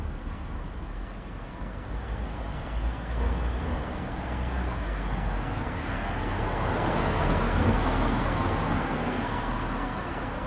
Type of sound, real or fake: fake